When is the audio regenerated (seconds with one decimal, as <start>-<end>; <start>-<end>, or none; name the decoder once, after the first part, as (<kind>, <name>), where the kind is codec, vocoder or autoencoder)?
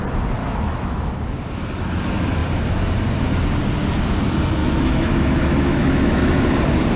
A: 0.4-1.1 (autoencoder, DAC-VAE); 4.6-6.3